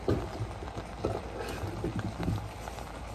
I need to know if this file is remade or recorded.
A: recorded